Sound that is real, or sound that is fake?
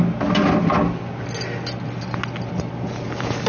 real